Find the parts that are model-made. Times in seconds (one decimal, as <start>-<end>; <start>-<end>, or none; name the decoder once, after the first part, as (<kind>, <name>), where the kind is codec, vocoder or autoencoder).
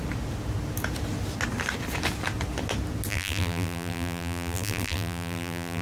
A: 3.1-5.8 (vocoder, BigVGAN v2)